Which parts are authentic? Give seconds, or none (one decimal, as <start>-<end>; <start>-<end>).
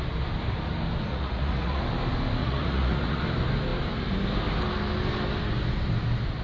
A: 0.0-1.1; 1.8-2.4; 3.2-6.4